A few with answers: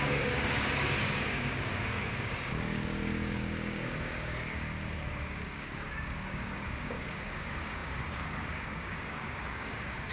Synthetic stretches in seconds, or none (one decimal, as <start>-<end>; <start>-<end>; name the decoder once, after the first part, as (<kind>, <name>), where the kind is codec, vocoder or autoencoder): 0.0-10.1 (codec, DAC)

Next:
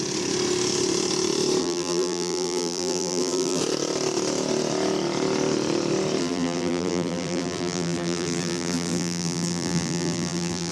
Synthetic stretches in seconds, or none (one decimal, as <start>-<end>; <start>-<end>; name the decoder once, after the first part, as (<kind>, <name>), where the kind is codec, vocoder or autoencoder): 1.6-3.6 (vocoder, BigVGAN v2); 6.2-10.7

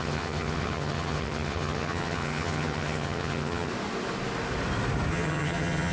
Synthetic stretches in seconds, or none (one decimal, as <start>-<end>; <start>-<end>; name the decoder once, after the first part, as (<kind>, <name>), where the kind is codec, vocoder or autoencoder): 0.0-3.7 (vocoder, HiFi-GAN); 5.1-5.9

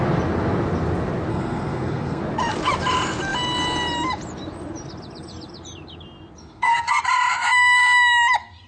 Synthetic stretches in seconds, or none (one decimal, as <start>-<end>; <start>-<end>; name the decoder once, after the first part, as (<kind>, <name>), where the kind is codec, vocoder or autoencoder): 1.3-2.2 (codec, SNAC); 6.4-7.0

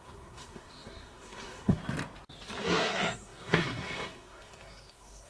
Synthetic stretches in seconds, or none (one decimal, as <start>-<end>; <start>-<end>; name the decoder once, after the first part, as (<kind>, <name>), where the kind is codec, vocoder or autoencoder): 0.0-1.8 (codec, SNAC); 2.6-5.3

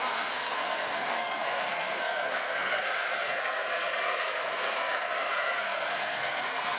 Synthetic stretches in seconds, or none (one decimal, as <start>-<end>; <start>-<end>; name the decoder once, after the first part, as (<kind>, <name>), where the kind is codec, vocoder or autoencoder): 0.0-6.8 (codec, SNAC)

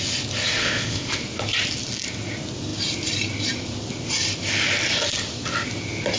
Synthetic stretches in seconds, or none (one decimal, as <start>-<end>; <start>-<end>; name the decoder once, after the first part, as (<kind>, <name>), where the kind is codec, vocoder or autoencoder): 0.6-1.2 (codec, ZipCodec)

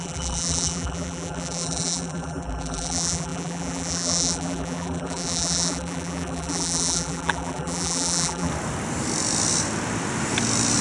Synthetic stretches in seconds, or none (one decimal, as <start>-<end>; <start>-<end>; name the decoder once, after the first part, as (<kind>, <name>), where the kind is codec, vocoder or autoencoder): 0.0-8.5 (vocoder, BigVGAN v2)